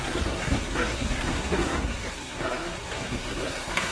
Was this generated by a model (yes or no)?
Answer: yes